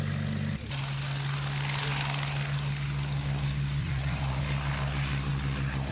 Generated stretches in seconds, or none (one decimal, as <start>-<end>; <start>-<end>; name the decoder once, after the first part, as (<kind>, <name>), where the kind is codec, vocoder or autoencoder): 3.8-4.4 (vocoder, Vocos)